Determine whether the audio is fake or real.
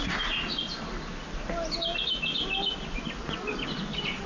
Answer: real